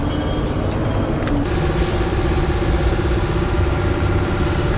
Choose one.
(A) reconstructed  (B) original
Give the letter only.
B